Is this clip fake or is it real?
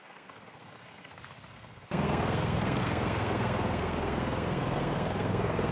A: fake